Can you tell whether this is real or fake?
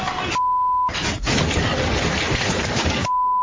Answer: real